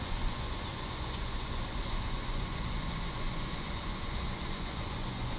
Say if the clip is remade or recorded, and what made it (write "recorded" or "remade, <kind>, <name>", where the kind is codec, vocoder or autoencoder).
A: remade, vocoder, Vocos